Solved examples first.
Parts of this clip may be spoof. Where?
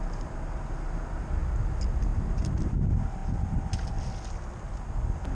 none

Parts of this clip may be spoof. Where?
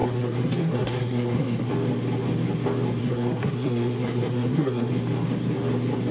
0.0-1.7 (codec, SNAC); 3.0-4.9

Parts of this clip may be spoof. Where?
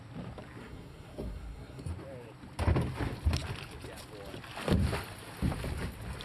0.6-1.9 (codec, SNAC)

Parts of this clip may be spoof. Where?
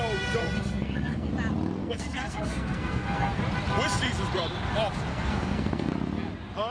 0.4-1.3 (codec, SNAC); 1.8-3.4; 5.1-5.9